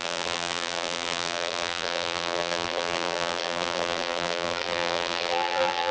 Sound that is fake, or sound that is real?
fake